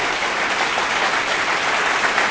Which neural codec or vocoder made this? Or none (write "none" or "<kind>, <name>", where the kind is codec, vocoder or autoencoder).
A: none